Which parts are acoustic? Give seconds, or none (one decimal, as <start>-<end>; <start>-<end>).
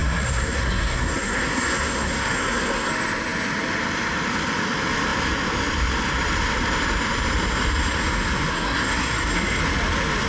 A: 2.9-8.5; 9.6-10.3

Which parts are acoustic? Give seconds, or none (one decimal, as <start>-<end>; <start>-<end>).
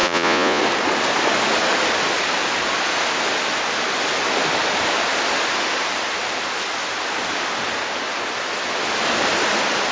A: 0.6-9.9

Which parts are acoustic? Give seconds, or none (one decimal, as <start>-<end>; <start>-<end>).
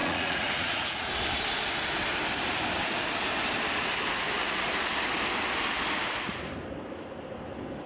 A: 1.1-7.9